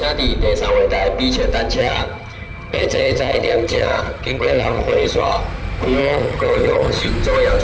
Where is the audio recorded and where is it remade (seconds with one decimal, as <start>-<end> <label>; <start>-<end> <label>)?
0.0-1.8 recorded; 1.8-5.4 remade; 5.4-6.0 recorded; 6.0-7.1 remade; 7.1-7.6 recorded